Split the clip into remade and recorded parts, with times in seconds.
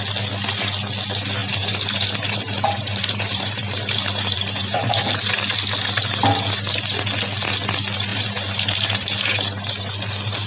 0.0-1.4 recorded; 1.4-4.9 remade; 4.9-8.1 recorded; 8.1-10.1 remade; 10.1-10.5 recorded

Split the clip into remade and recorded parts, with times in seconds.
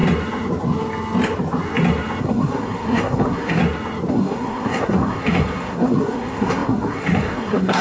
0.0-2.2 recorded; 2.2-3.6 remade; 3.6-4.1 recorded; 4.1-7.8 remade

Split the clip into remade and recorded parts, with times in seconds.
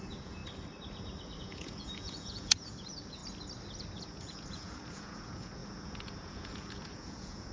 0.0-0.4 remade; 0.4-1.4 recorded; 1.4-3.2 remade; 3.2-4.0 recorded; 4.0-7.5 remade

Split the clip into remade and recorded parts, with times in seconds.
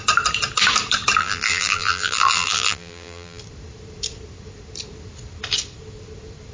0.0-1.2 recorded; 1.2-3.4 remade; 3.4-6.5 recorded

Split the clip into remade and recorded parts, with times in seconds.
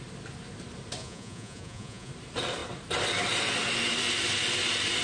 0.0-1.0 recorded; 1.0-2.1 remade; 2.1-5.0 recorded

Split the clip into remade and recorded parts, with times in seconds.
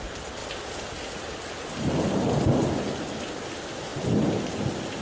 0.0-5.0 recorded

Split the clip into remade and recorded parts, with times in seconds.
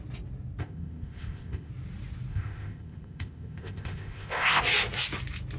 0.0-0.6 recorded; 0.6-1.7 remade; 1.7-2.3 recorded; 2.3-4.6 remade; 4.6-5.6 recorded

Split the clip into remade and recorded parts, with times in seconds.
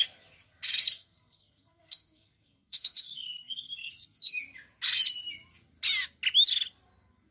0.0-0.9 recorded; 0.9-4.4 remade; 4.4-7.3 recorded